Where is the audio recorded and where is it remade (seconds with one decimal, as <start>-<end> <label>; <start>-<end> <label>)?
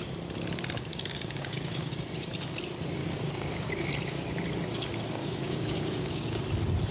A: 0.0-0.9 recorded; 0.9-1.9 remade; 1.9-3.0 recorded; 3.0-3.9 remade; 3.9-5.2 recorded; 5.2-6.4 remade; 6.4-6.9 recorded